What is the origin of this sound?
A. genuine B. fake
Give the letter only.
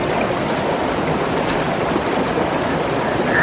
A